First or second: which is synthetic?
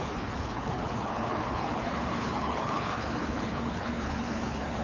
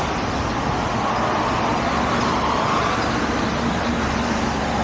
first